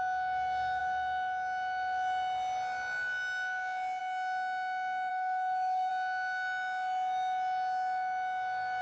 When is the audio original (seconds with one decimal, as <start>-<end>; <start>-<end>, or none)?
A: 0.0-5.1; 5.9-8.8